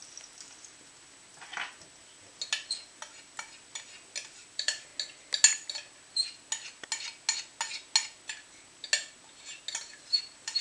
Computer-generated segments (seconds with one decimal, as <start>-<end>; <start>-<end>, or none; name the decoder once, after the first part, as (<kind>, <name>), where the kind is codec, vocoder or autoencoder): 4.2-4.9 (vocoder, BigVGAN v2); 9.7-10.6